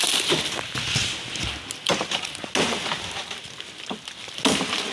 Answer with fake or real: real